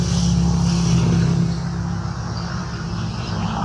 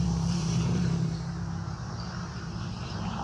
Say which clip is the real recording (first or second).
first